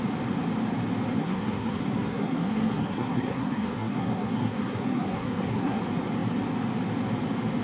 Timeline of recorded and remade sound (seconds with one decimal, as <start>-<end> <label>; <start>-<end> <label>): 0.0-1.2 recorded; 1.2-5.8 remade; 5.8-7.6 recorded